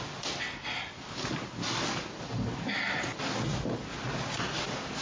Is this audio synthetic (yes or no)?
no